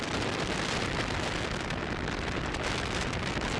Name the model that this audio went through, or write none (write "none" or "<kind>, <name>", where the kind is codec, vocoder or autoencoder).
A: none